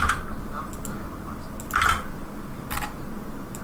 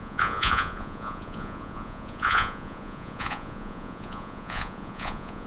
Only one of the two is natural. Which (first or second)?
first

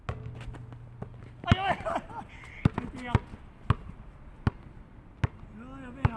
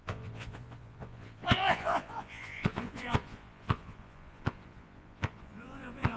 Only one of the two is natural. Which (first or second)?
first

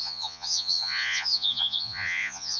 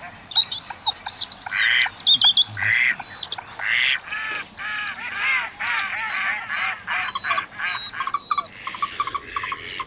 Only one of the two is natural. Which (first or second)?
second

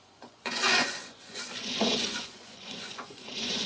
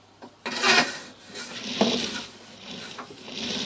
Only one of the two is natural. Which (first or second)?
second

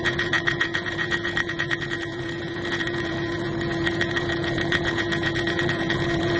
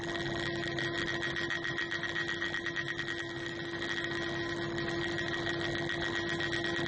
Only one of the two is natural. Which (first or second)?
second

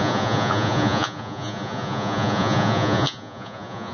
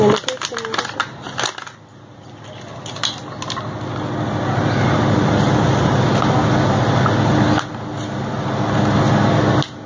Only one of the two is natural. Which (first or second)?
second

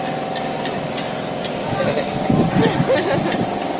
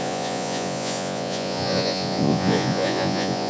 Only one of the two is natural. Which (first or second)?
first